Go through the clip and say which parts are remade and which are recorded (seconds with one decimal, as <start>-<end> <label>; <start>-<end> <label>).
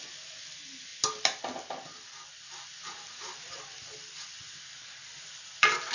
0.0-5.9 recorded